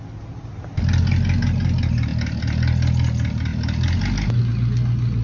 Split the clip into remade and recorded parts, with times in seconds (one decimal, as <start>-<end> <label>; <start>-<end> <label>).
0.0-5.2 recorded